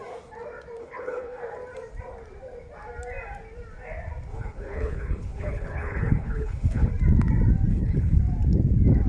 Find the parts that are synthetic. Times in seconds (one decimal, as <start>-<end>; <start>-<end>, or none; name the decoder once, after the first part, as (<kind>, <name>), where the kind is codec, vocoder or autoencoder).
0.8-1.4 (codec, HILCodec); 4.3-6.9; 7.7-8.2

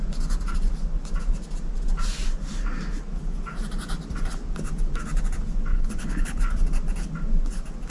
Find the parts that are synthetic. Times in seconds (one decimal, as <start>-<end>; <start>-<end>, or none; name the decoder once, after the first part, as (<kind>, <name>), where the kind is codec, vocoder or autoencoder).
5.7-6.4 (codec, HILCodec)

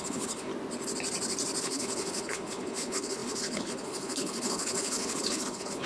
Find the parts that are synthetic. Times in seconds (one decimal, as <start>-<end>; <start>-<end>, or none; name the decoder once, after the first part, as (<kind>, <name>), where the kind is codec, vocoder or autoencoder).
0.0-0.5 (codec, HILCodec); 1.6-5.9

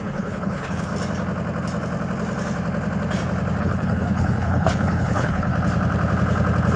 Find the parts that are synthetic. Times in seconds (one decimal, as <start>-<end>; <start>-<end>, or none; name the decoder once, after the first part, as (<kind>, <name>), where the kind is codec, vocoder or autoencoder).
0.0-0.9 (codec, HILCodec); 3.6-5.5

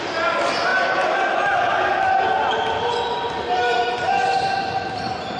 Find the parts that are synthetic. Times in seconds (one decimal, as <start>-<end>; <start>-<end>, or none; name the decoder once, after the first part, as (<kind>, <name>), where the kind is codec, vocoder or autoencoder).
none

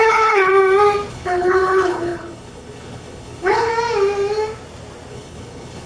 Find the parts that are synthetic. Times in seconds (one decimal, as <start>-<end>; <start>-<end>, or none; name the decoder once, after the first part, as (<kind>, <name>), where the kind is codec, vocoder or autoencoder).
0.0-0.5 (codec, HILCodec); 1.1-3.7; 5.1-5.9

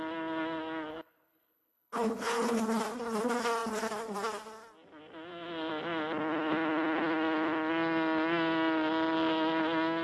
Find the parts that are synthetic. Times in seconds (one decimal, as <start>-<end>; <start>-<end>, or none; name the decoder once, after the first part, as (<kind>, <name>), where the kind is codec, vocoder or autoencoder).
0.9-2.6 (codec, HILCodec)